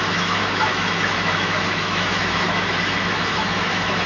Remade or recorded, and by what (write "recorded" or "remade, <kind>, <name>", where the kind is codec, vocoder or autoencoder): remade, autoencoder, DAC-VAE